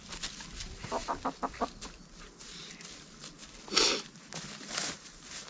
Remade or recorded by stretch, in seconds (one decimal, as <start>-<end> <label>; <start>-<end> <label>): 0.0-5.5 recorded